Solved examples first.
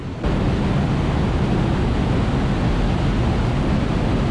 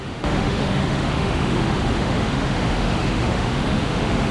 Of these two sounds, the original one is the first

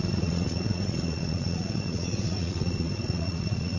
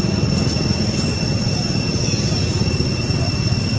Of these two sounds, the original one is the second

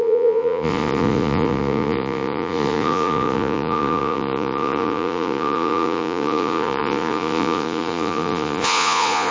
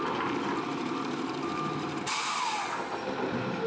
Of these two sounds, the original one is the second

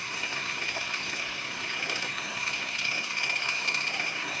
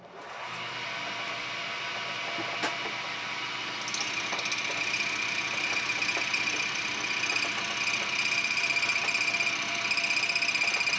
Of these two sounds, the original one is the second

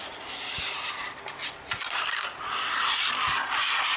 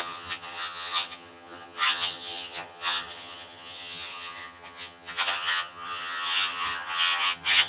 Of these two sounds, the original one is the first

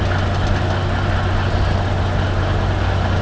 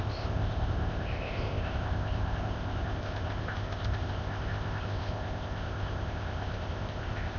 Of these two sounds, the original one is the first